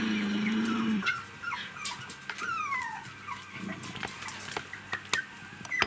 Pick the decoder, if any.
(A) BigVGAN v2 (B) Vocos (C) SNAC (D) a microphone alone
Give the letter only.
D